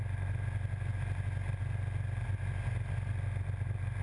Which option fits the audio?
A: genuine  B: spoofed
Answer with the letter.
A